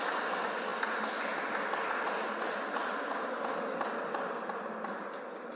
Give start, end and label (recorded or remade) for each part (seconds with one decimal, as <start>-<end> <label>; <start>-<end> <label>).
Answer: 0.0-5.6 recorded